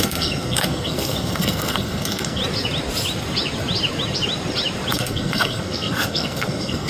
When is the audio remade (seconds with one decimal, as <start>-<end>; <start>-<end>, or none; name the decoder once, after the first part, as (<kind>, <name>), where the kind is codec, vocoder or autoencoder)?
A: 0.0-2.4 (codec, SNAC); 4.9-6.9